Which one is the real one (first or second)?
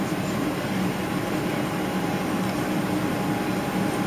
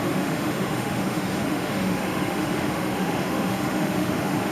first